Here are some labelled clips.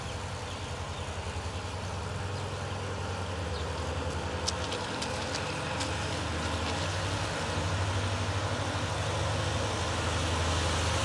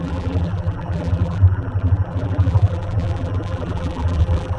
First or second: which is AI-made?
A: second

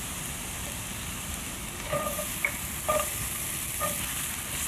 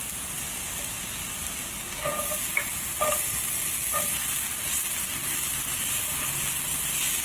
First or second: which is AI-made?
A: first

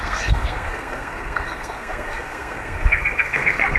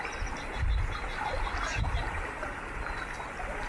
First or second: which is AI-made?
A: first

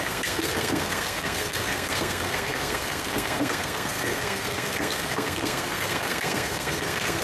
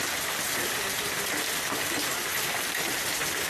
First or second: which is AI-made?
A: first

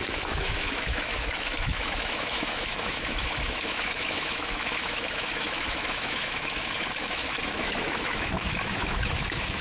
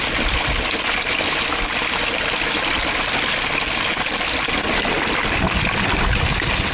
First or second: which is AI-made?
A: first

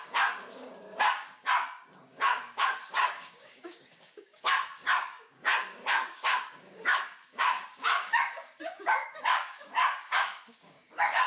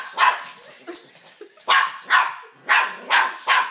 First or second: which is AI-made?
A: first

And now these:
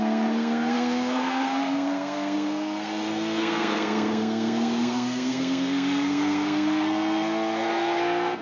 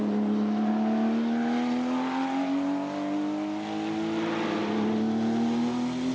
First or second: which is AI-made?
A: first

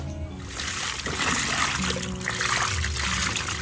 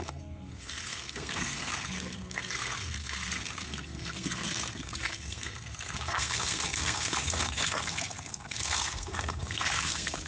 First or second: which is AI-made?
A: second